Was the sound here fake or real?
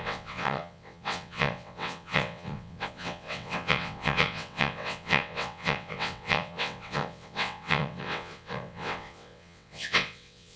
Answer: fake